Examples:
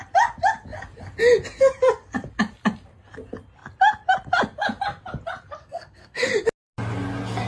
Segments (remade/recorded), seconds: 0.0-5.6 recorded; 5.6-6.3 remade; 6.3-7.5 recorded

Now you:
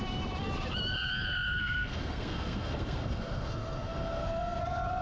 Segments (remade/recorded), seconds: 0.0-1.6 recorded; 1.6-4.6 remade; 4.6-5.0 recorded

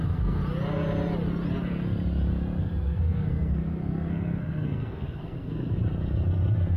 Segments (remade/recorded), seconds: 0.0-0.4 remade; 0.4-2.6 recorded; 2.6-5.8 remade; 5.8-6.8 recorded